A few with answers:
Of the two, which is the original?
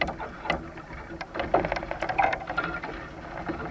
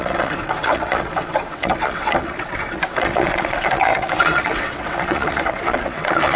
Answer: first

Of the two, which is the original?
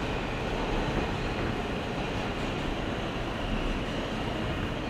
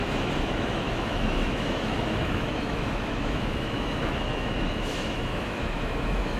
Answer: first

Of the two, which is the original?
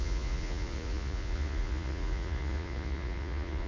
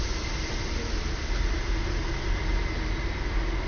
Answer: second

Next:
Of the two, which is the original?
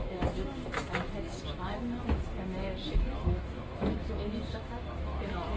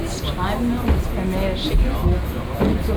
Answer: second